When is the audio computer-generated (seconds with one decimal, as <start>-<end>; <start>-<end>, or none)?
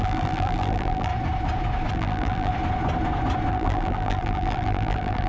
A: 0.0-1.1; 1.9-2.5; 3.5-5.3